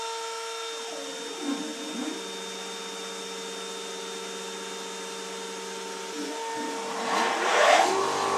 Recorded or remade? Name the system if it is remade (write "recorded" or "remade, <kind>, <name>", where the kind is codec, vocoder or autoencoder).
recorded